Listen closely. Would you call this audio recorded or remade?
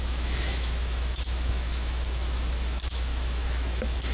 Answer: remade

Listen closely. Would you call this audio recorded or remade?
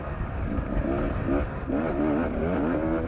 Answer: recorded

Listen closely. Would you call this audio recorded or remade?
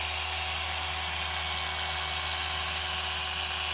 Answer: recorded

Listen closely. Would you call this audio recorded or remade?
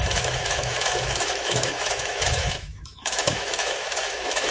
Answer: remade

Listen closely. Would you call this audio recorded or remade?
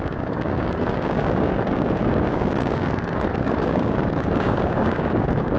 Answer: remade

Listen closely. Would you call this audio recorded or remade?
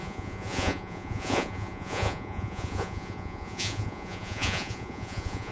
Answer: remade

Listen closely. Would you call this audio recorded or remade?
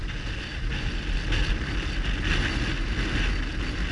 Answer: recorded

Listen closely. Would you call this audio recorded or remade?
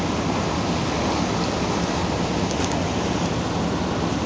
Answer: recorded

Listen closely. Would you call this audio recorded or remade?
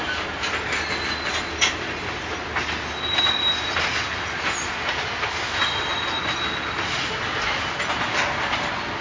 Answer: recorded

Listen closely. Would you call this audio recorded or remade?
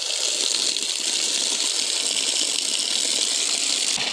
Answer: recorded